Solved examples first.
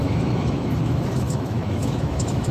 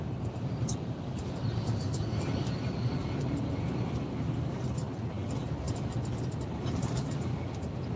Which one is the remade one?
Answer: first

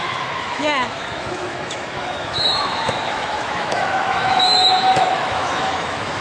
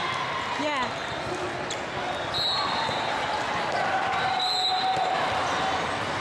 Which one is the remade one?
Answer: first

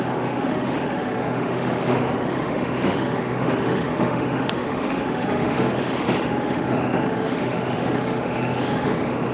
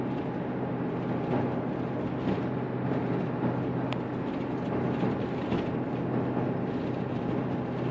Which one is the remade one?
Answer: first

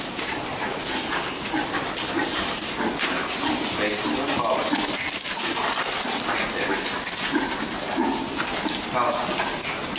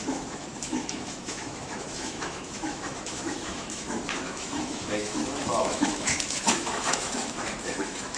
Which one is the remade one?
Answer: second